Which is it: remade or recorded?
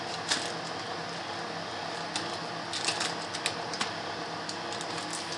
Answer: recorded